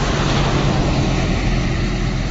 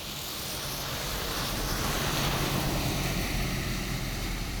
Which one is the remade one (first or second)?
second